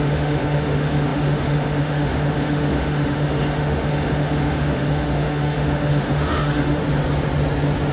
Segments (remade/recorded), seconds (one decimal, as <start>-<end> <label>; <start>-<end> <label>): 0.0-6.8 remade; 6.8-7.9 recorded